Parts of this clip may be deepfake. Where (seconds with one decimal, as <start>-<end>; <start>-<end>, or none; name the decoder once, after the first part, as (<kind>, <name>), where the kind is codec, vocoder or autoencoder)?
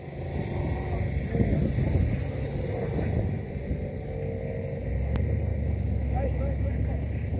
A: 5.5-6.7 (autoencoder, DAC-VAE)